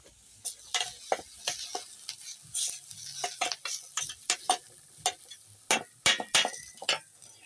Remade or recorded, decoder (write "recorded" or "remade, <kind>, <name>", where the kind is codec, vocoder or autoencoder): recorded